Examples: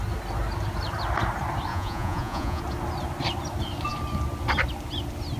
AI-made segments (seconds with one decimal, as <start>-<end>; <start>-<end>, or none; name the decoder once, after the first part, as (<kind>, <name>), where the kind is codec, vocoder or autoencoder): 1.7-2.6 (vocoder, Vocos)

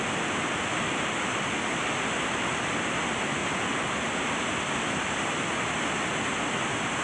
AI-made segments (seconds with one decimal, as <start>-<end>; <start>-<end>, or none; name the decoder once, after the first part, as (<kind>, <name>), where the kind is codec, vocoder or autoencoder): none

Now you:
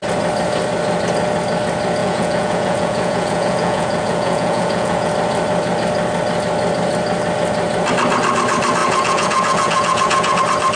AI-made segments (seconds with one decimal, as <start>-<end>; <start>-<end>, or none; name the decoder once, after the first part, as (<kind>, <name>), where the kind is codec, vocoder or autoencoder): 2.0-5.1 (vocoder, Vocos); 8.8-10.4

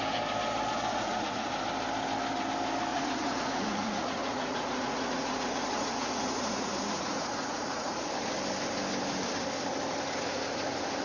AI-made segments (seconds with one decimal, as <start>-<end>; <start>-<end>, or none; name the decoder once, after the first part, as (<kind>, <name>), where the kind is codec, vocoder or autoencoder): 0.9-1.5 (vocoder, Vocos); 2.9-8.1

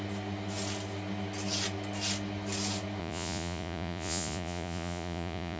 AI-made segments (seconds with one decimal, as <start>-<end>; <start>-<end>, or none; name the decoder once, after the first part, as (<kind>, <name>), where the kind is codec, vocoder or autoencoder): 3.0-5.6 (vocoder, Vocos)

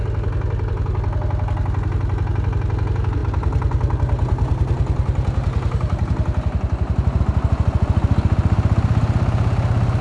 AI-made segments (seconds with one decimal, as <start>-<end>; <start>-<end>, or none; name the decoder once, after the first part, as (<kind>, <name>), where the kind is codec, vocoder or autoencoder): none

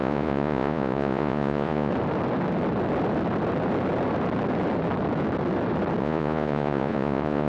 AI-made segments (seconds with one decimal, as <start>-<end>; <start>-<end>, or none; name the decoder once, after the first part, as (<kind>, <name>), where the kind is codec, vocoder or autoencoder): 0.0-1.9 (vocoder, Vocos); 6.0-7.5

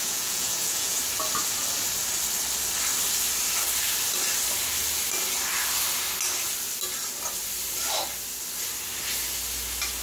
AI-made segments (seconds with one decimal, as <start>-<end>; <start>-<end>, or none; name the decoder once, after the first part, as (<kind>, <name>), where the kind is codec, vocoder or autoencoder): 0.0-1.0 (vocoder, Vocos)